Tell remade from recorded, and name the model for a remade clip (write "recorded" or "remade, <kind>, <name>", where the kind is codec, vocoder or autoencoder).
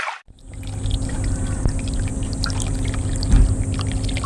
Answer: recorded